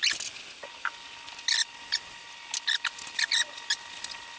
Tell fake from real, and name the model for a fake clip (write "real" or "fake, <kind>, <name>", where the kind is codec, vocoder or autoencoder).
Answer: real